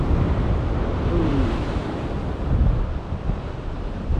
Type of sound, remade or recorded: recorded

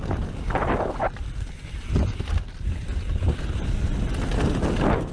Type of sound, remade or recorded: recorded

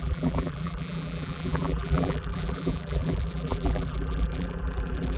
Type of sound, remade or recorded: remade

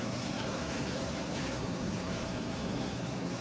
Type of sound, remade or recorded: remade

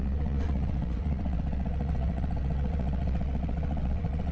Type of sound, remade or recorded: remade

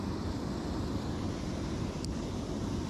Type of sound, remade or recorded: recorded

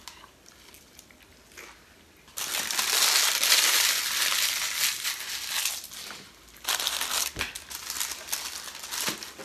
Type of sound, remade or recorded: recorded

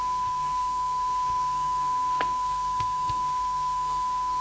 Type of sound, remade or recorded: remade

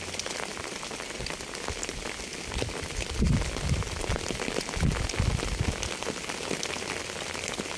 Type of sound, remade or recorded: recorded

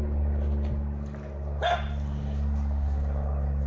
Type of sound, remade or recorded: recorded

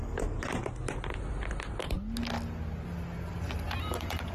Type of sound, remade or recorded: recorded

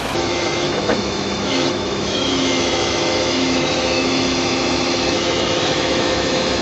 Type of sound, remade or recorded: remade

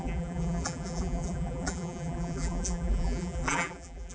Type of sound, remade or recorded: remade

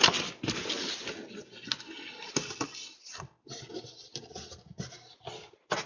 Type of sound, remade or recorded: recorded